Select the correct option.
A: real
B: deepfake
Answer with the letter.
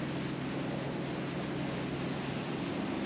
A